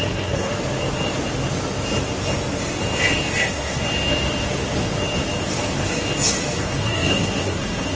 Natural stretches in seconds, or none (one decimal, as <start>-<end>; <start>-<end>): 0.5-3.4; 3.8-6.6